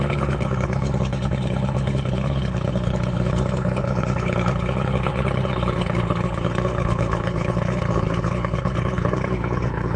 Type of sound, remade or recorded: remade